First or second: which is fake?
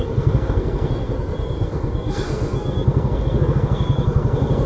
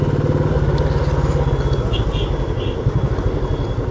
first